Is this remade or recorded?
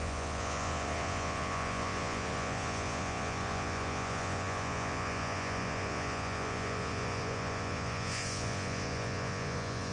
remade